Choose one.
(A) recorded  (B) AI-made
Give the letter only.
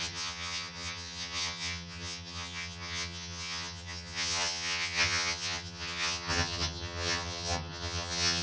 B